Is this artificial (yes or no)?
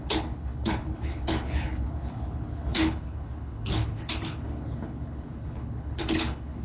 yes